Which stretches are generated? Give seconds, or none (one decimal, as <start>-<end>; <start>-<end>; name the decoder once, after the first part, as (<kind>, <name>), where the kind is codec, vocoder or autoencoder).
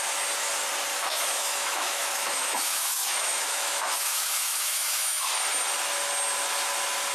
0.9-5.2 (autoencoder, DAC-VAE)